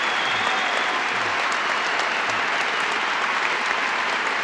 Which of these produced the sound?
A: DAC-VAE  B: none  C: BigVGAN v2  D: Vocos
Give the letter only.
B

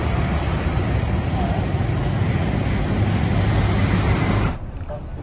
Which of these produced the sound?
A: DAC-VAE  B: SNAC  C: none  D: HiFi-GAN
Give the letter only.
C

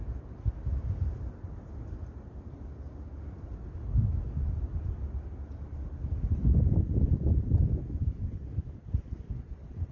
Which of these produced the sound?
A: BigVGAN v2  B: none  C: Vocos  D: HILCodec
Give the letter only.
B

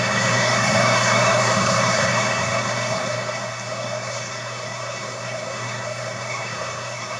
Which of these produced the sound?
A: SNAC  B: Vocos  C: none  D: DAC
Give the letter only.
A